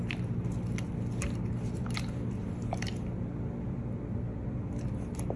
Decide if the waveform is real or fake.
real